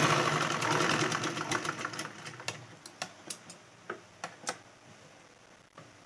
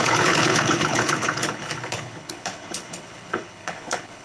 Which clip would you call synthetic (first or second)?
second